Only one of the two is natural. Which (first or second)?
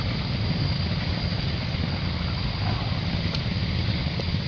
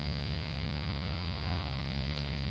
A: first